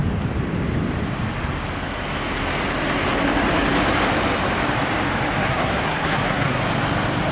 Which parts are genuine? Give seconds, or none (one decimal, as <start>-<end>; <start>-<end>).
0.0-5.4; 6.6-7.3